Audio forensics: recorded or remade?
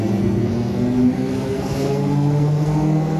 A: remade